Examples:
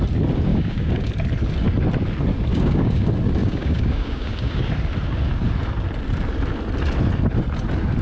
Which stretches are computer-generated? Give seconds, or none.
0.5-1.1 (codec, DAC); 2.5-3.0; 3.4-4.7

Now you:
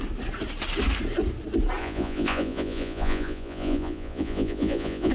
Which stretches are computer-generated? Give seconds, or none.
1.8-5.1 (vocoder, Vocos)

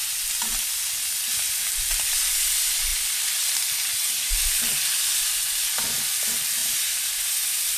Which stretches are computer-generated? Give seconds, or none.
none

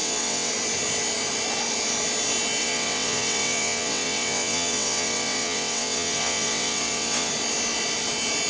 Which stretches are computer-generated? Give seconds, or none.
0.0-0.5 (vocoder, WaveNeXt); 2.6-7.3

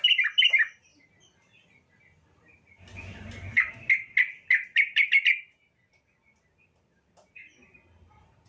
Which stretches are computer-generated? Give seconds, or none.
none

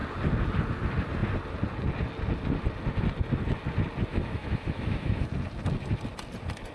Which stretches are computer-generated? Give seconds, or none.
4.1-5.3 (autoencoder, DAC-VAE)

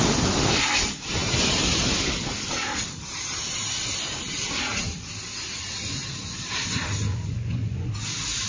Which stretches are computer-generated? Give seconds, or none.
7.1-7.9 (vocoder, Vocos)

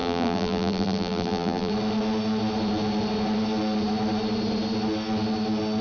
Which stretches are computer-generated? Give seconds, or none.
0.0-1.7 (vocoder, BigVGAN v2)